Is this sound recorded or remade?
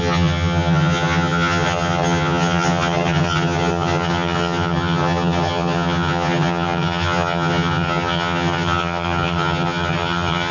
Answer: remade